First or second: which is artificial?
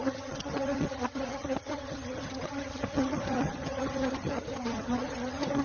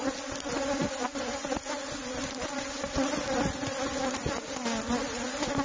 first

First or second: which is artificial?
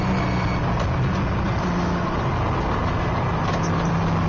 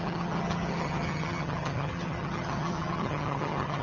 second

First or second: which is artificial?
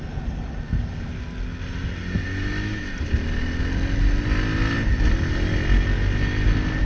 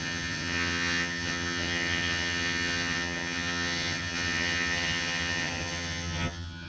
second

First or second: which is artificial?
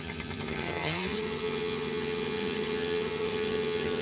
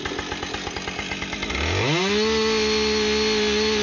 first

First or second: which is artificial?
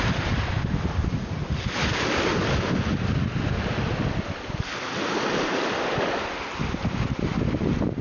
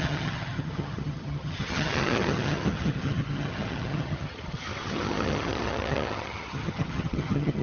second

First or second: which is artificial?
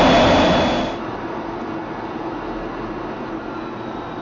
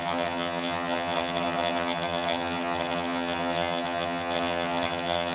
second